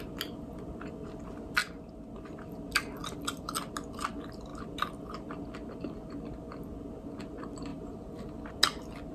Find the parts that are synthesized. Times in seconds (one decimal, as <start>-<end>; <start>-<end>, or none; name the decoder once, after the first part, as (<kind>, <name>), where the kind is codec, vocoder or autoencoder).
3.0-3.5 (vocoder, BigVGAN v2); 7.7-8.5